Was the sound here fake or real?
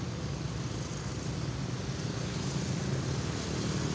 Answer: real